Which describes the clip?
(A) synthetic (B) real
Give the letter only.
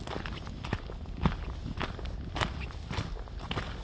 B